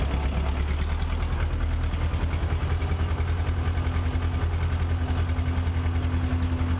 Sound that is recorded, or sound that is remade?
recorded